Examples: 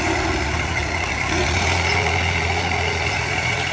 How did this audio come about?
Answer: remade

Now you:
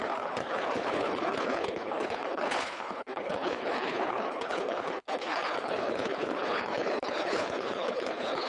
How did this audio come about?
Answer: remade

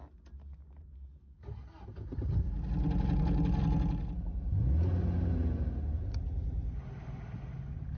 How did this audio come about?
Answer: recorded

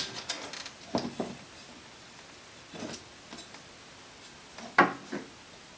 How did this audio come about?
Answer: recorded